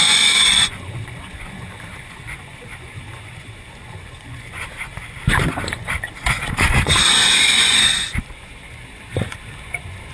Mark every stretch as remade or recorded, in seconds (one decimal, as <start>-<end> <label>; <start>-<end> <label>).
0.0-4.9 remade; 4.9-5.5 recorded; 5.5-10.1 remade